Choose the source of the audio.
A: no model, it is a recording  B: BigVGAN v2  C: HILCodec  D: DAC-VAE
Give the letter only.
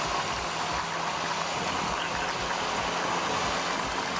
A